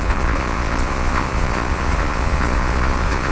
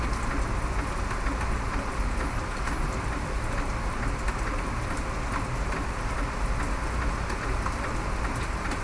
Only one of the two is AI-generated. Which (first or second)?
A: first